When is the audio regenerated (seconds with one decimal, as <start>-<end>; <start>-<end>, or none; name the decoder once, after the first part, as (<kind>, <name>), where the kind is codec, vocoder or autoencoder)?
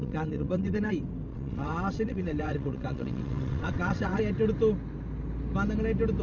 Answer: 0.0-0.9 (vocoder, WaveNeXt); 1.3-4.2